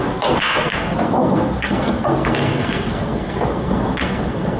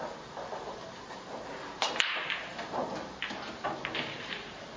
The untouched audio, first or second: second